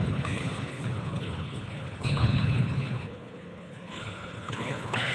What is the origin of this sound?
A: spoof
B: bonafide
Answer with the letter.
A